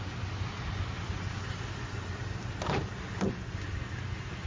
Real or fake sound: real